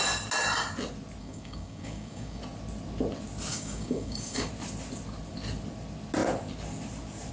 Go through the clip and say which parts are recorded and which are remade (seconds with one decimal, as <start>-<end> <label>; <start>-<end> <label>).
0.0-1.2 recorded; 1.2-2.4 remade; 2.4-3.5 recorded; 3.5-4.5 remade; 4.5-7.3 recorded